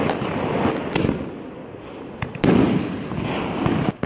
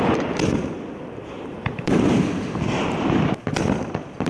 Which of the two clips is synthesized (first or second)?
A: second